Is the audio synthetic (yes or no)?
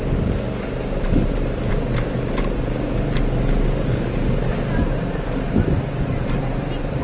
no